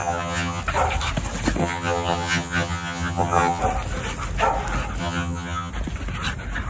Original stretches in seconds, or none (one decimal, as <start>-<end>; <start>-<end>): 0.6-1.6; 3.6-5.0; 5.7-6.7